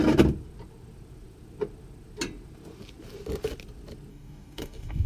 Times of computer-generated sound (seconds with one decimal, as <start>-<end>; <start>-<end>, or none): 4.1-5.1